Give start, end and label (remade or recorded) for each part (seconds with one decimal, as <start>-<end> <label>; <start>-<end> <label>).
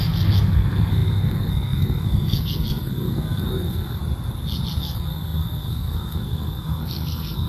0.0-4.0 remade; 4.0-4.8 recorded; 4.8-7.5 remade